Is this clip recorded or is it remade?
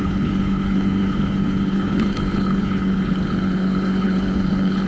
remade